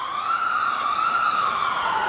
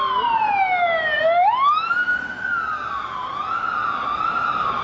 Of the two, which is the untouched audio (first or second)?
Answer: second